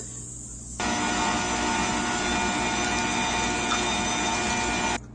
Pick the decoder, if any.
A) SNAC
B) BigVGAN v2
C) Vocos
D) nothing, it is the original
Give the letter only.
D